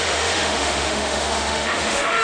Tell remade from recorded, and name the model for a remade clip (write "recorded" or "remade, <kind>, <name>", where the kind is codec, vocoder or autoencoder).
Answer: remade, autoencoder, DAC-VAE